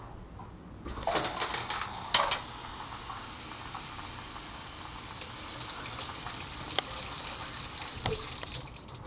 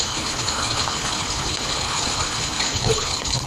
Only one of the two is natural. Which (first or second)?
first